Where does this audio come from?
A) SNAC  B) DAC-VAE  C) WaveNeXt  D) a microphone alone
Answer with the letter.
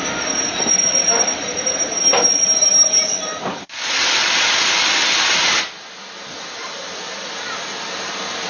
D